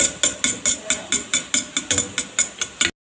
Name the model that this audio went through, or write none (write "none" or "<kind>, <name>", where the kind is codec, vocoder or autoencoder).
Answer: none